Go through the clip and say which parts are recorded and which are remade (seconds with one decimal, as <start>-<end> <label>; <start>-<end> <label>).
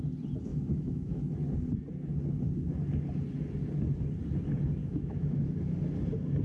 0.0-0.5 recorded; 0.5-1.2 remade; 1.2-4.8 recorded; 4.8-5.4 remade; 5.4-6.4 recorded